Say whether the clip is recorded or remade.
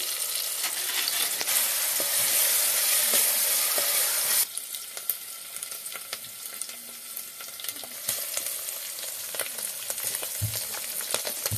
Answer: recorded